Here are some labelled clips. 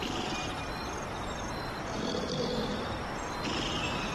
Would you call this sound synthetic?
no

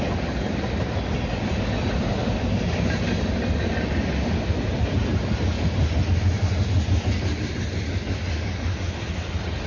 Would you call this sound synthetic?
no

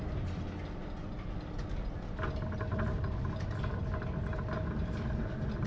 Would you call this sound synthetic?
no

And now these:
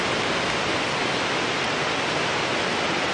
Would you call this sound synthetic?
no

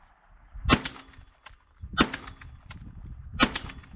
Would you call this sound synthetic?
no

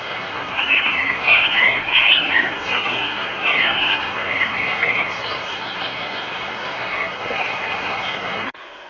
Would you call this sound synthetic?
yes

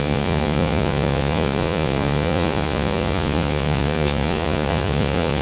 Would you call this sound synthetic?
yes